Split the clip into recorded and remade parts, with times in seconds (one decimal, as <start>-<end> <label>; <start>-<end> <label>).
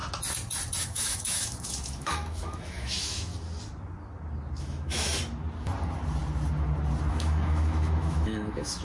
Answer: 0.0-0.8 recorded; 0.8-3.3 remade; 3.3-4.6 recorded; 4.6-5.2 remade; 5.2-7.1 recorded; 7.1-8.8 remade